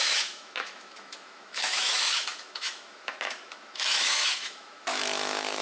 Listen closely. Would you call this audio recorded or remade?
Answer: remade